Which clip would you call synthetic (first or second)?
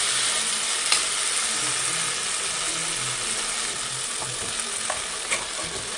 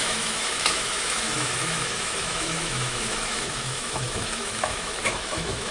second